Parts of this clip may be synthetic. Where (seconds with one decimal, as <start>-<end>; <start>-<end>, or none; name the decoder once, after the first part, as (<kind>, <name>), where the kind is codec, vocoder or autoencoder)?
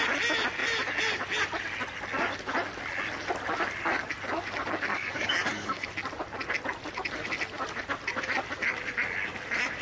4.9-5.9 (codec, DAC)